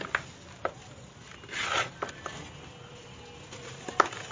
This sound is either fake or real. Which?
real